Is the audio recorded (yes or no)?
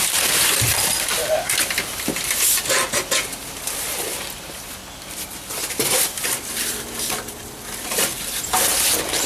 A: no